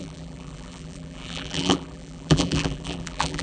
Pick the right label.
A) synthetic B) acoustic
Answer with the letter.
A